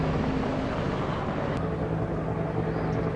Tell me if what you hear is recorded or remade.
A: recorded